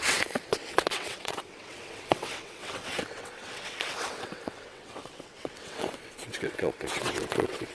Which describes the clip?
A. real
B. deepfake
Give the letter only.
B